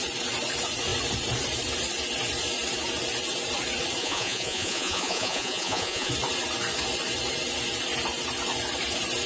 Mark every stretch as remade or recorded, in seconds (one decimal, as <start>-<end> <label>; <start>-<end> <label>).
0.0-4.0 recorded; 4.0-6.1 remade; 6.1-9.3 recorded